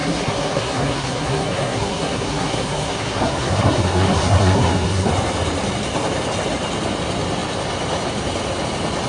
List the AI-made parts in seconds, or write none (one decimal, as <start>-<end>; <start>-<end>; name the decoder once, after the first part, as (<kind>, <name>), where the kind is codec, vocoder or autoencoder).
0.0-5.1 (codec, SNAC)

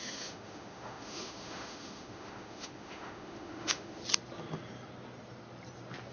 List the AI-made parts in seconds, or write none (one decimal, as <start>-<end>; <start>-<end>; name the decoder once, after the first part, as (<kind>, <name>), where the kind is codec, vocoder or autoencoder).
0.0-4.0 (autoencoder, DAC-VAE)

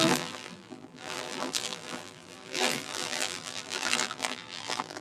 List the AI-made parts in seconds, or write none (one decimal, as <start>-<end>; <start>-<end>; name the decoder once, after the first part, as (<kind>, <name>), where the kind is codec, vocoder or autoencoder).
0.0-5.0 (vocoder, BigVGAN v2)

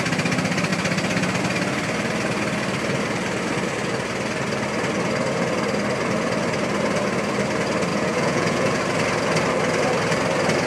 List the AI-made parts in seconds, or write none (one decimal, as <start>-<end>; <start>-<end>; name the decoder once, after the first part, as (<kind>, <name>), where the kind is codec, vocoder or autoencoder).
7.9-8.8 (vocoder, Vocos)

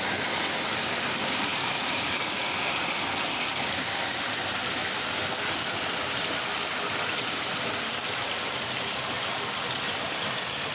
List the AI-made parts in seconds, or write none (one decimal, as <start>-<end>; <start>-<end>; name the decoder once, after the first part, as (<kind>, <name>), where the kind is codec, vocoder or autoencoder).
1.5-2.3 (vocoder, BigVGAN v2); 4.8-5.8

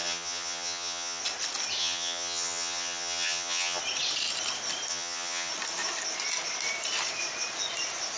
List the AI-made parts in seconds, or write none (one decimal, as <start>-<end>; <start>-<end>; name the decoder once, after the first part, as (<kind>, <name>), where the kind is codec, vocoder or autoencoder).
0.0-1.2 (vocoder, HiFi-GAN); 1.8-3.8; 4.9-5.5

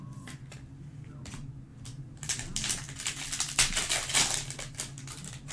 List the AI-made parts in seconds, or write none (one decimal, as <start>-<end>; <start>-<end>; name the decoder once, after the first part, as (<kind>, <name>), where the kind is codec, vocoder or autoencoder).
none